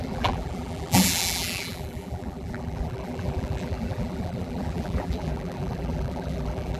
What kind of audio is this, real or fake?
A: fake